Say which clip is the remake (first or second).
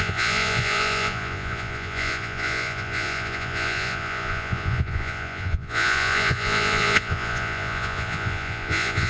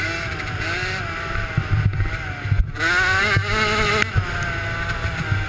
first